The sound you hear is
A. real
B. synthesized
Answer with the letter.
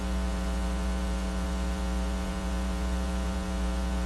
B